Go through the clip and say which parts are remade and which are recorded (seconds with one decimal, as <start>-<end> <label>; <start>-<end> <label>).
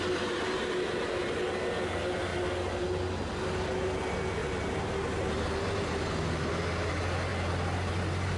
0.0-8.4 recorded